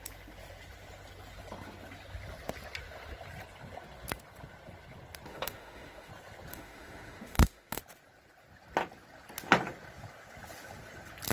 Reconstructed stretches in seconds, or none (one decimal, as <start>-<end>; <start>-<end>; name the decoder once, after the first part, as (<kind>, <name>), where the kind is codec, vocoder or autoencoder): 5.3-6.1 (autoencoder, DAC-VAE); 6.5-7.8